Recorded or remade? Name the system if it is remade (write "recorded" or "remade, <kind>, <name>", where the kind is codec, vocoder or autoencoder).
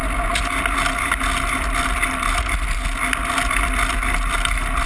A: recorded